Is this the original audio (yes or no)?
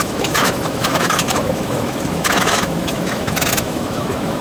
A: no